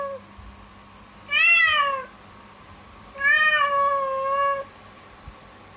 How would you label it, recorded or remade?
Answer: recorded